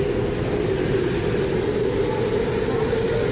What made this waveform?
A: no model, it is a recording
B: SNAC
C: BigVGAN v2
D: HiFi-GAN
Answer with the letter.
A